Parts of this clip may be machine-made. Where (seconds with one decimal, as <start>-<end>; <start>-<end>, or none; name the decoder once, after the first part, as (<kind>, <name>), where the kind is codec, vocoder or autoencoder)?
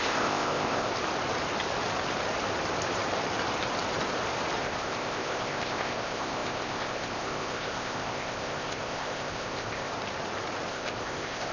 0.0-0.9 (codec, ZipCodec); 4.6-9.9; 10.7-11.5